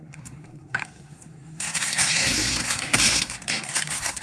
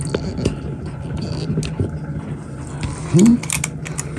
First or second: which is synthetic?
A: first